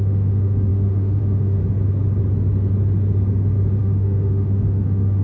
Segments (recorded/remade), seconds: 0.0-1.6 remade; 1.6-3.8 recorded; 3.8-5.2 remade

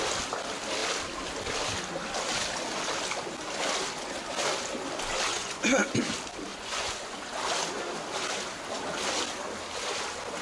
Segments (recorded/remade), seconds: 0.0-5.3 recorded; 5.3-5.9 remade; 5.9-6.5 recorded; 6.5-7.3 remade; 7.3-10.4 recorded

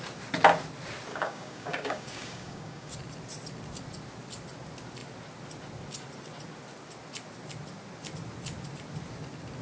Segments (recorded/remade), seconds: 0.0-1.1 recorded; 1.1-2.9 remade; 2.9-9.6 recorded